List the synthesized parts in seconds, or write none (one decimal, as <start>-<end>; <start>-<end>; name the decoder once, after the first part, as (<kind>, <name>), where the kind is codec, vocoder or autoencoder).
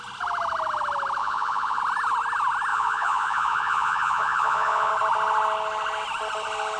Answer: 1.2-1.8 (vocoder, Vocos); 2.7-4.9